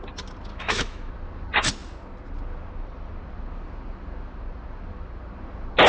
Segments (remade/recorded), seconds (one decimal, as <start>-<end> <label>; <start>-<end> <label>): 0.0-0.5 recorded; 0.5-1.1 remade; 1.1-5.9 recorded